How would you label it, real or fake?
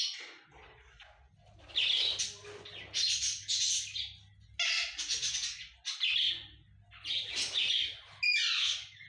real